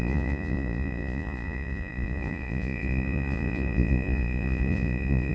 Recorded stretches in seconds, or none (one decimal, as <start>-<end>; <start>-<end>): none